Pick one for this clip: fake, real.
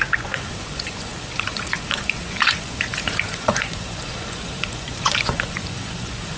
fake